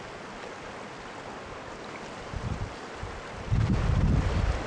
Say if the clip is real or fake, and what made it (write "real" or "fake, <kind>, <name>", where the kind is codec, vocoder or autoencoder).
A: real